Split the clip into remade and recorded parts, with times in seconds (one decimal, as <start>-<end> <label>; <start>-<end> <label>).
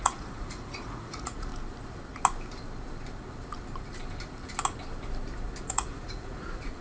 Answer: 0.0-1.5 remade; 1.5-5.6 recorded; 5.6-6.8 remade